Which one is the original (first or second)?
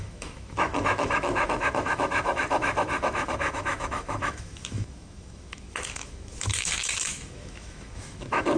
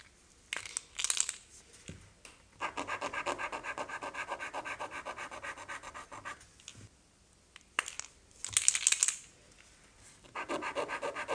second